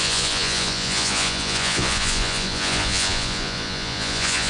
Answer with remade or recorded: remade